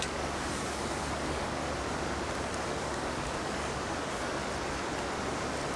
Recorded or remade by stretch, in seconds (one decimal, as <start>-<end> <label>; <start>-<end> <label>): 0.0-1.6 remade; 1.6-2.4 recorded; 2.4-4.4 remade; 4.4-5.8 recorded